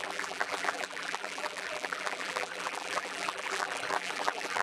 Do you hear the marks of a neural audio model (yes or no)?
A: yes